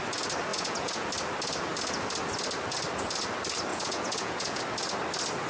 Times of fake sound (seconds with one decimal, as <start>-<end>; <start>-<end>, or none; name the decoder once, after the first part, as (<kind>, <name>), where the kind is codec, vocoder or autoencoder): 0.5-1.1 (vocoder, Vocos); 3.7-4.6